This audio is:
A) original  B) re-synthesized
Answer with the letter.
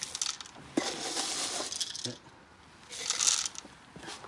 A